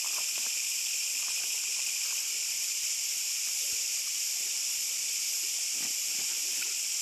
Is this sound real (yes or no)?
yes